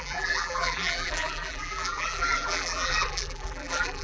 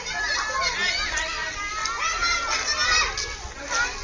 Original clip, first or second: second